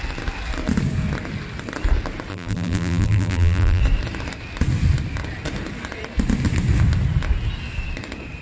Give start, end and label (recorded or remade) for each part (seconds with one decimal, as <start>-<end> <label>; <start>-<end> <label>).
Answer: 0.0-2.3 recorded; 2.3-3.8 remade; 3.8-8.4 recorded